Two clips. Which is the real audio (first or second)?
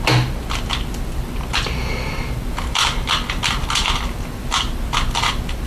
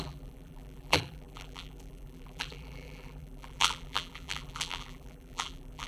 first